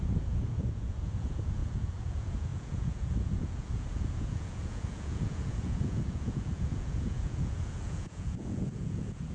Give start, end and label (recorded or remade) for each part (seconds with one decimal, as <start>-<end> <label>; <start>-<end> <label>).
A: 0.0-9.3 remade